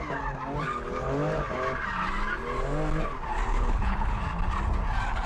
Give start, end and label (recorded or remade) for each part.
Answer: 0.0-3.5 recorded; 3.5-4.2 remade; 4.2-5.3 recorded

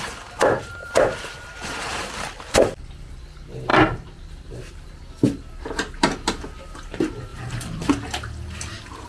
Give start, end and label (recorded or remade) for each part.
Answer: 0.0-0.8 recorded; 0.8-2.8 remade; 2.8-3.7 recorded; 3.7-4.9 remade; 4.9-7.3 recorded; 7.3-7.9 remade; 7.9-9.1 recorded

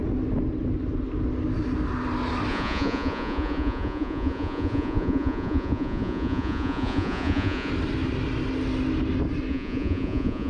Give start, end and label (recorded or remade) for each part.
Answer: 0.0-2.5 recorded; 2.5-7.7 remade; 7.7-9.5 recorded; 9.5-10.5 remade

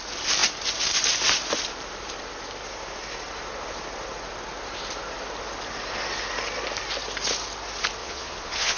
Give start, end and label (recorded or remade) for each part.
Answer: 0.0-8.0 recorded; 8.0-8.8 remade

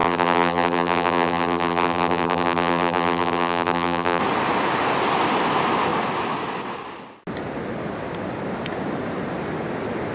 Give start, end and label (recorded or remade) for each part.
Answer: 0.0-4.2 remade; 4.2-10.1 recorded